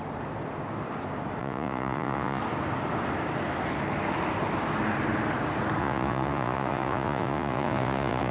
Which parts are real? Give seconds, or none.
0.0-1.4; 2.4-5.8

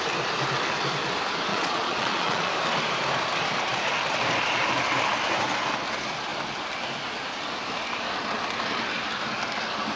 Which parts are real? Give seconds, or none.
0.0-1.5; 2.5-10.0

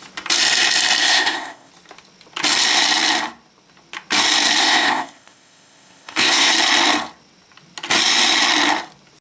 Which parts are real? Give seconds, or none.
0.0-1.0; 1.7-4.6; 6.5-9.2